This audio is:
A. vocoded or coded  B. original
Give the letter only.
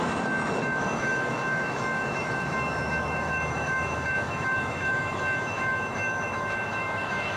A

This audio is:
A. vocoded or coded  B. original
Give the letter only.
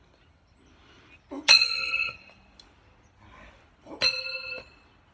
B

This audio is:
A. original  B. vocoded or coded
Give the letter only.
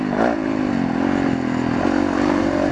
A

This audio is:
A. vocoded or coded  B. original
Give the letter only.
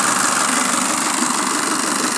B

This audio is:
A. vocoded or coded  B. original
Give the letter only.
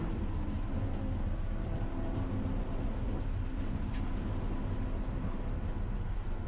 B